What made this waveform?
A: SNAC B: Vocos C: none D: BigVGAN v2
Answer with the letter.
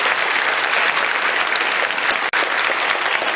C